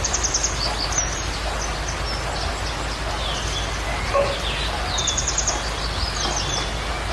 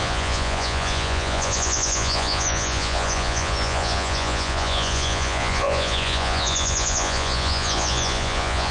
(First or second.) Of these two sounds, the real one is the first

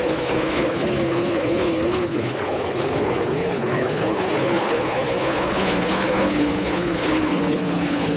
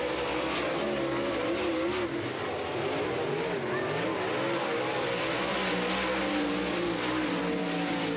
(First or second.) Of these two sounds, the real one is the second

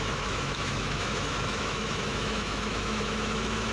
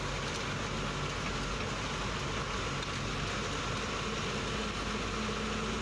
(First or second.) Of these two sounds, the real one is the second